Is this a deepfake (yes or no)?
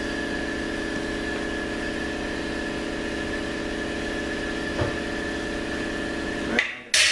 no